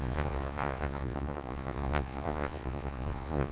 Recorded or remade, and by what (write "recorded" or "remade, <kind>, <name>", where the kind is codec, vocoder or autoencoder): remade, vocoder, Vocos